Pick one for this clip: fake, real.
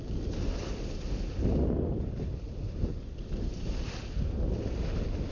real